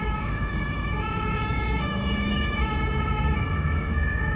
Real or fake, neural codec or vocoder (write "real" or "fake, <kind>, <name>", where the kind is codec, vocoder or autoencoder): fake, autoencoder, DAC-VAE